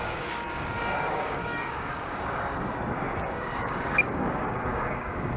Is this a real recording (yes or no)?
no